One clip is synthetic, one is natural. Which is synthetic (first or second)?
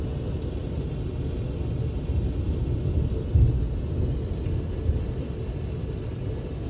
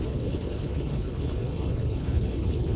second